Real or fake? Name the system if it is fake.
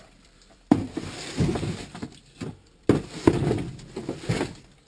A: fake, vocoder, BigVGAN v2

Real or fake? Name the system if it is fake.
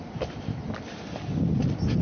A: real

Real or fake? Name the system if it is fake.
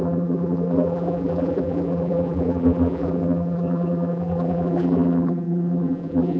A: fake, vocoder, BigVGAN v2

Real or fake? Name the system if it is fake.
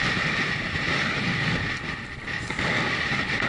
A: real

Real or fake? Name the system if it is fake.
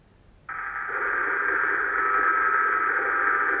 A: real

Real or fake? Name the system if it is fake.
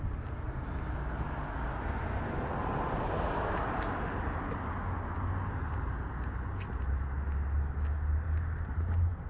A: real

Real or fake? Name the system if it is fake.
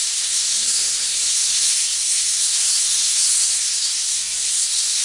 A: fake, codec, SNAC